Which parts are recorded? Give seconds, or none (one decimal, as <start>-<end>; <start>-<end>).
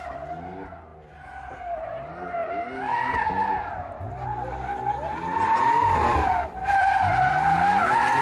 0.0-8.2